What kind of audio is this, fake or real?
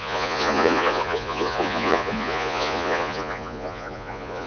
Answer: fake